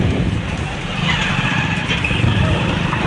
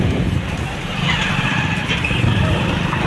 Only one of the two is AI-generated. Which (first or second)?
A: first